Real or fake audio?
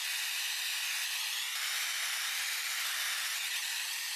real